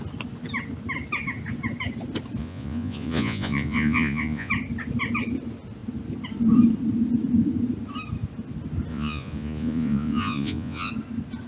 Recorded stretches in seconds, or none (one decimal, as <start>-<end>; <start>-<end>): 0.0-2.4; 4.5-8.9; 10.9-11.5